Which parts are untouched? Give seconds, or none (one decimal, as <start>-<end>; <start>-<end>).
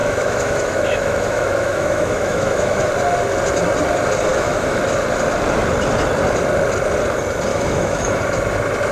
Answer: 2.9-4.3; 4.8-7.5; 8.2-8.9